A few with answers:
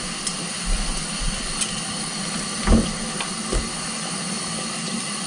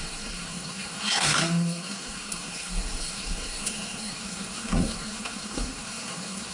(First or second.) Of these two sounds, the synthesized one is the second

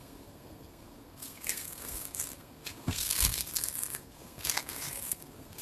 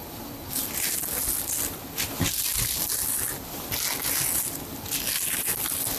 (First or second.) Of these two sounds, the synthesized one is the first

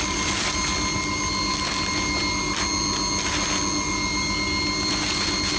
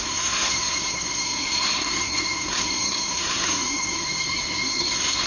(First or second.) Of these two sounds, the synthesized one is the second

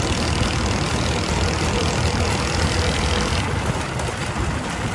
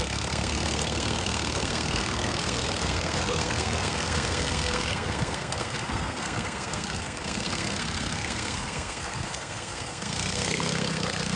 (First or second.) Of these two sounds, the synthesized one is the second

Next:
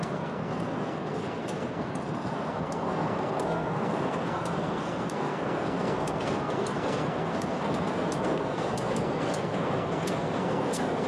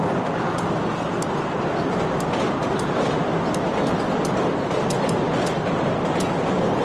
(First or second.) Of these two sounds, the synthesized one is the first